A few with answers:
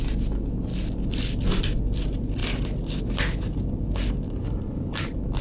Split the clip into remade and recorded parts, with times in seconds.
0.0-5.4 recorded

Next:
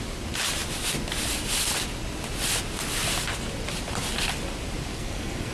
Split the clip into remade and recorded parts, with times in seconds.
0.0-4.9 recorded; 4.9-5.5 remade

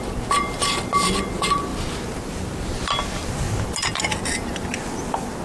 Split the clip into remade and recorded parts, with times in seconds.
0.0-5.4 recorded

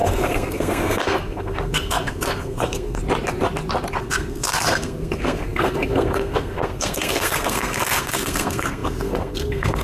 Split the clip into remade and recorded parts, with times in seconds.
0.0-3.0 remade; 3.0-4.0 recorded; 4.0-9.8 remade